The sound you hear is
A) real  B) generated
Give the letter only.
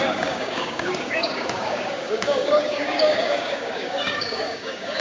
B